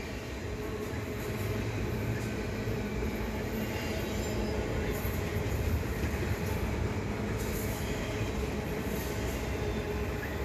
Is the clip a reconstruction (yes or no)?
no